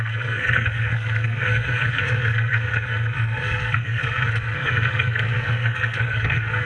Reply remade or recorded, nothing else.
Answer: remade